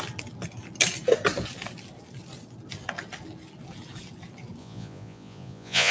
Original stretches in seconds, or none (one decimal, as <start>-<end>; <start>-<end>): 0.0-4.6